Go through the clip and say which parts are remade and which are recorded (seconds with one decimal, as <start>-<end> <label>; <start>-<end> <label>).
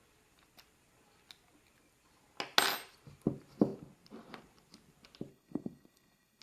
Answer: 0.0-5.3 recorded; 5.3-6.4 remade